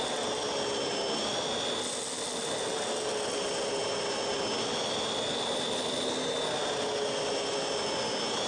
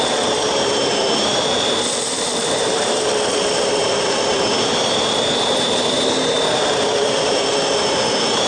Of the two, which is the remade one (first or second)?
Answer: second